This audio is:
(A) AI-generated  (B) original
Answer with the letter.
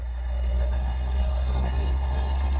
A